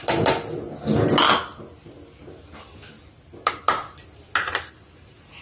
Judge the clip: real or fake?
real